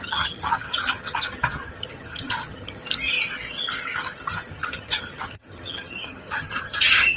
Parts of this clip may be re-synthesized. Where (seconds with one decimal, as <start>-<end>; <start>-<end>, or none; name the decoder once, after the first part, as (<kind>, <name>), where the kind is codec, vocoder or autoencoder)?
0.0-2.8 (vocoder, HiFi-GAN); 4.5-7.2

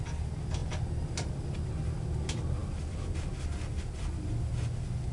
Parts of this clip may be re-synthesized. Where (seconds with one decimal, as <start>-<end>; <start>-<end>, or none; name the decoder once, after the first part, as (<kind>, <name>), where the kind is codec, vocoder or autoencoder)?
none

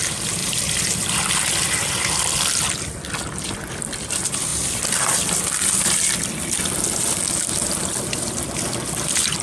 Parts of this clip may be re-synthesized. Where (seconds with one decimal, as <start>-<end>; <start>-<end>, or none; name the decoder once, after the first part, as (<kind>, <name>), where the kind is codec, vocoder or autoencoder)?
0.4-2.0 (vocoder, BigVGAN v2); 4.5-6.1; 7.8-8.7

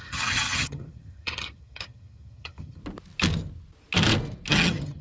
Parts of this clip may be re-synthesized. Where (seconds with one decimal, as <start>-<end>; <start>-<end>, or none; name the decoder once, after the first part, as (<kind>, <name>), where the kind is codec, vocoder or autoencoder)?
0.0-2.8 (vocoder, HiFi-GAN); 4.5-5.0